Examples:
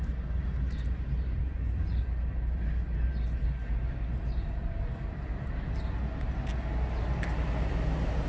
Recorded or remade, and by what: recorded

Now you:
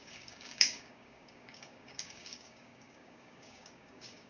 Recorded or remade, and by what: remade, codec, DAC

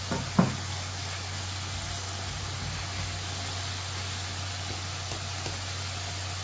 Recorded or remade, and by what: recorded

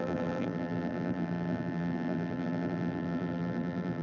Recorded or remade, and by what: remade, vocoder, BigVGAN v2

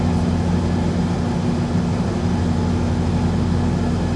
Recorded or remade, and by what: recorded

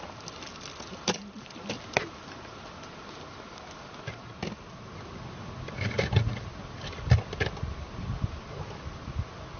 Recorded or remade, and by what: recorded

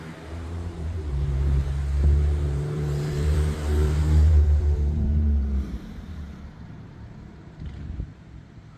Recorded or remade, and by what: remade, vocoder, BigVGAN v2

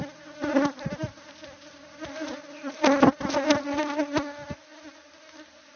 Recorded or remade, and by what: recorded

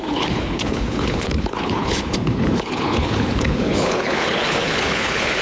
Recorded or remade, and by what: remade, codec, HILCodec